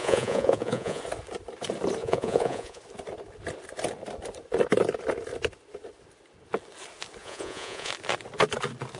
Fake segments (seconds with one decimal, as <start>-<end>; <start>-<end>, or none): 0.0-1.0; 2.0-2.8; 7.2-7.9